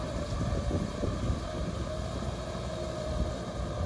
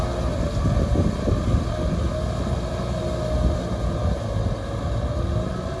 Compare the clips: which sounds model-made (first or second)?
first